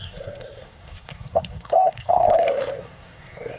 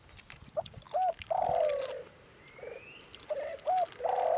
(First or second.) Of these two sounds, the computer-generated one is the first